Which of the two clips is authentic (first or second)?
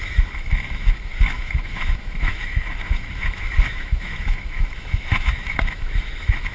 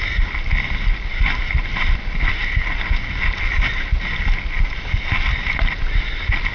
second